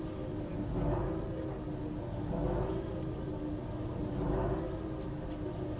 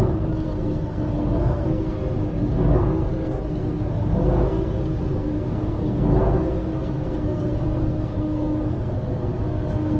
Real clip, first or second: first